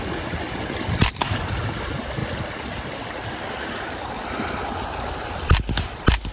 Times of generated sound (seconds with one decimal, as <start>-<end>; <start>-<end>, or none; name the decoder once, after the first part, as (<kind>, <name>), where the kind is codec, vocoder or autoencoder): none